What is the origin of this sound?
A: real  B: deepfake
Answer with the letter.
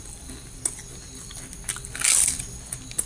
A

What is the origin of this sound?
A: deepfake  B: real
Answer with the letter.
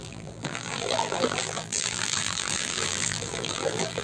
A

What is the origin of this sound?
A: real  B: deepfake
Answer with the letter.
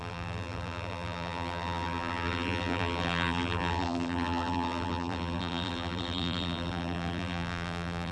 B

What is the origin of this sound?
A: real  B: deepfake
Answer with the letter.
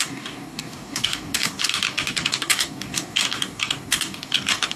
B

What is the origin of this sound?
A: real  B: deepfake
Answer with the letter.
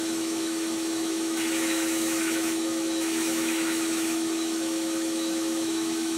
B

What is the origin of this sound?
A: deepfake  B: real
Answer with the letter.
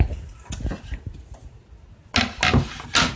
B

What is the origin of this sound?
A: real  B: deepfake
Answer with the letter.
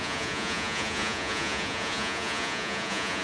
B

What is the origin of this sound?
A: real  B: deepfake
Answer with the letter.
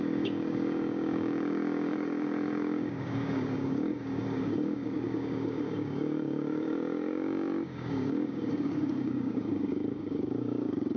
B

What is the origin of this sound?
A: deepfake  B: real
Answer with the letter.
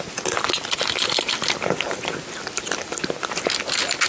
B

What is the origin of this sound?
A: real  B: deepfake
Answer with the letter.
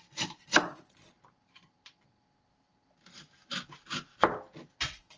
A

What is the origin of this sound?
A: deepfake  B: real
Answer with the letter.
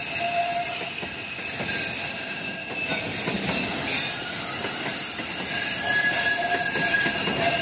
B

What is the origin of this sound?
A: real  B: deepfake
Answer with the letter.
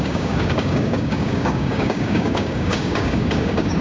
B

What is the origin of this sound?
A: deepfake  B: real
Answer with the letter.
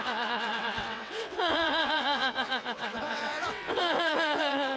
A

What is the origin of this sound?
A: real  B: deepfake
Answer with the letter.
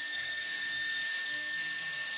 B